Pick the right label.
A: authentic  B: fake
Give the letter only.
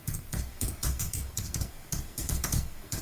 B